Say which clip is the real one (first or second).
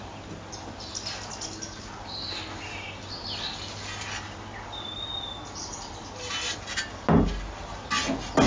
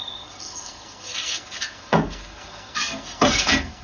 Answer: first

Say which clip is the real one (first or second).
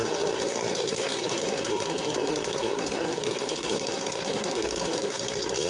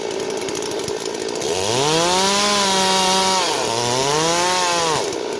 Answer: second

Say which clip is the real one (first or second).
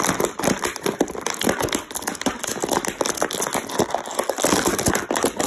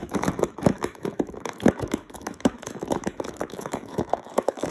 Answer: first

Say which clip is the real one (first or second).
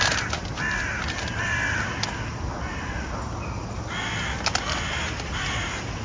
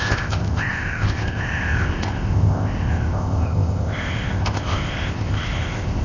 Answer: first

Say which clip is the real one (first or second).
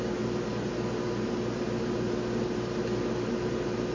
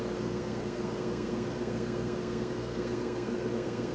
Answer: first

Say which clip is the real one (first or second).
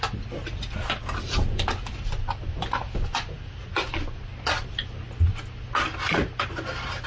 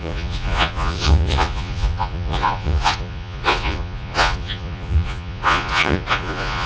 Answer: first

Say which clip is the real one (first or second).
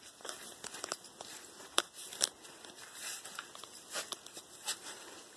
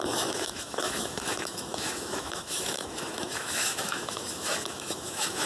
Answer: first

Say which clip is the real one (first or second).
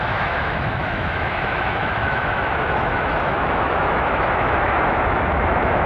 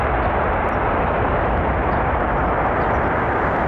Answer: second